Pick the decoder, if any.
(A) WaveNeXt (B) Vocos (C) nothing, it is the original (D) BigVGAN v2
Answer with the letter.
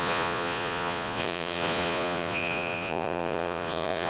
B